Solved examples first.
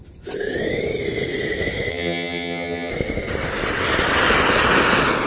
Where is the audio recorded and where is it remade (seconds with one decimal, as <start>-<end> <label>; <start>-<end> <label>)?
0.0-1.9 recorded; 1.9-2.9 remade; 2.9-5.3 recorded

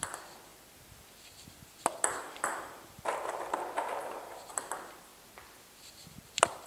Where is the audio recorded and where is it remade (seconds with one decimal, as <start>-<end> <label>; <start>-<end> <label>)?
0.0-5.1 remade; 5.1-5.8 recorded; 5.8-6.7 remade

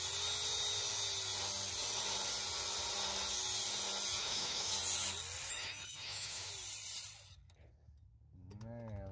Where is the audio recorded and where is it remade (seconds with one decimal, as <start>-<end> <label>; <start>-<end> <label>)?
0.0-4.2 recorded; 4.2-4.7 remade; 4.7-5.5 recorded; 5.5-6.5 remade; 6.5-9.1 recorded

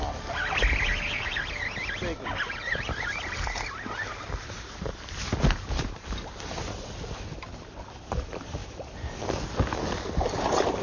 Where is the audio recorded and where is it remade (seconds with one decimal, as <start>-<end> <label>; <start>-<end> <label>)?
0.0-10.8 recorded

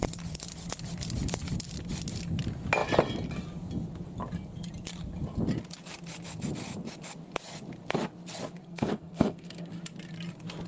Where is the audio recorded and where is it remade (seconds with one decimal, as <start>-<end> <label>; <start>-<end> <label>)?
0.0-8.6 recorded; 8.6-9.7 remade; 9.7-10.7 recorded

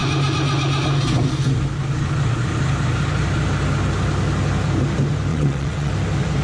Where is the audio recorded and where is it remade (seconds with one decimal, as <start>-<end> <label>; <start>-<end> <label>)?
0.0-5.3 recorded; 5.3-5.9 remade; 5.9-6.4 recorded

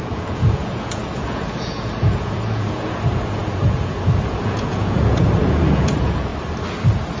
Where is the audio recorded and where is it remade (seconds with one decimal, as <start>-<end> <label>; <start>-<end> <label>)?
0.0-6.3 remade; 6.3-7.2 recorded

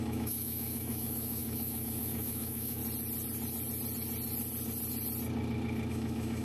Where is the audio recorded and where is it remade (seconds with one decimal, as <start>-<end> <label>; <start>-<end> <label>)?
0.0-2.8 remade; 2.8-5.9 recorded; 5.9-6.4 remade